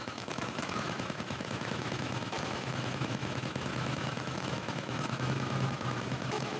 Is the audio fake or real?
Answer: fake